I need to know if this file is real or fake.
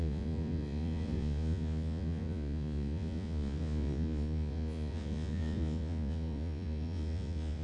fake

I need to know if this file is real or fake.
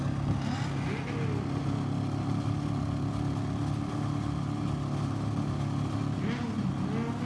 real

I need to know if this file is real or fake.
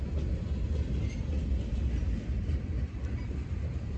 real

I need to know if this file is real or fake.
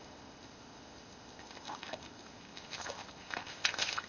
fake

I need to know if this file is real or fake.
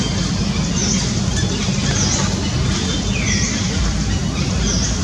real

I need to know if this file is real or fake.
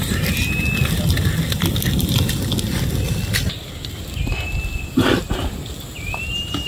real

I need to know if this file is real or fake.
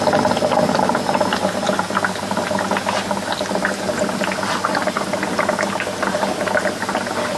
real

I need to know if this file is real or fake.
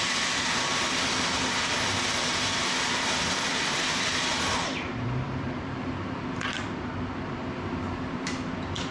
fake